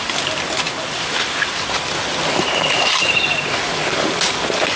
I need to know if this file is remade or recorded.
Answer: recorded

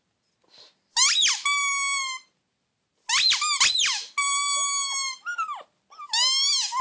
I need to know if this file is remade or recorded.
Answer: recorded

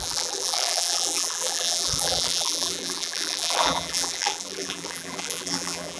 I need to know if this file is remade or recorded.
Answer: remade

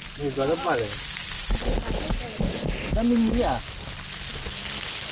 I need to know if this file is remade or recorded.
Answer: recorded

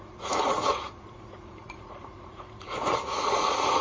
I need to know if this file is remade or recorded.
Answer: remade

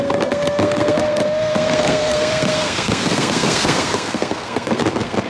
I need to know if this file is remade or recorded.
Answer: remade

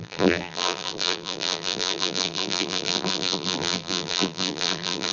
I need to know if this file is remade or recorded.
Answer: remade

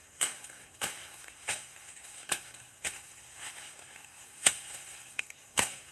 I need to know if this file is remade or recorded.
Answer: remade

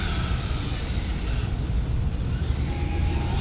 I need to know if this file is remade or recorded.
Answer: recorded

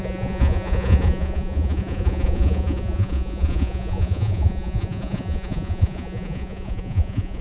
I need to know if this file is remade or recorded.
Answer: remade